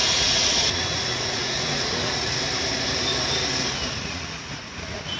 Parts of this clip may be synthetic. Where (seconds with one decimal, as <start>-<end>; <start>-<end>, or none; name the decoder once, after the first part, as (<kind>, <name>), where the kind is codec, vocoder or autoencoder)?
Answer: 0.0-2.4 (vocoder, Vocos); 4.0-5.2